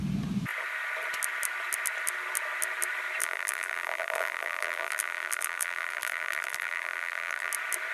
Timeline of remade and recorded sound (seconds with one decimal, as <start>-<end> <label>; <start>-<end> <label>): 0.0-3.2 recorded; 3.2-7.5 remade; 7.5-7.9 recorded